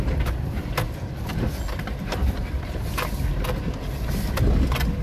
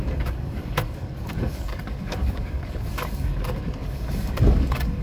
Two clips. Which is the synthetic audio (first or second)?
second